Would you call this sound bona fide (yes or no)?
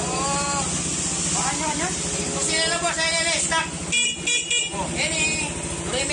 yes